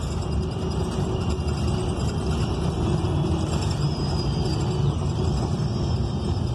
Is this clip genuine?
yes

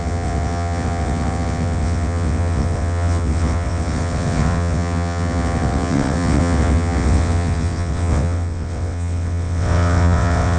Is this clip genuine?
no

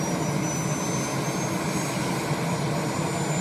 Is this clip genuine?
yes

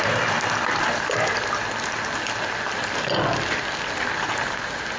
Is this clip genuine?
yes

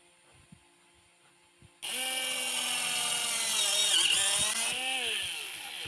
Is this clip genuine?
yes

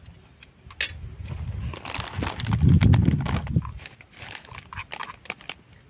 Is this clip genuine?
yes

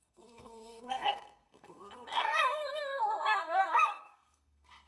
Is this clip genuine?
no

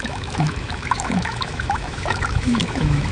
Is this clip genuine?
no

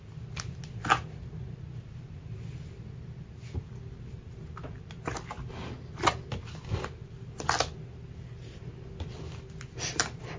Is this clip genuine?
yes